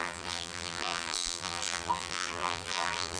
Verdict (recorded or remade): remade